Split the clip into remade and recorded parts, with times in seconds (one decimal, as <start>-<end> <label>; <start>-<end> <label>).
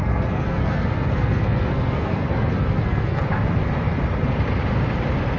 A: 0.0-3.2 remade; 3.2-5.4 recorded